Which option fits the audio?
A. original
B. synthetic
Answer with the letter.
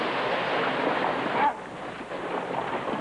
A